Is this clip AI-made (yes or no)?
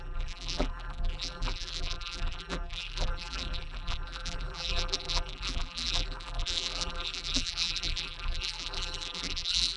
yes